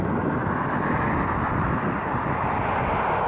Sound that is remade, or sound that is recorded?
recorded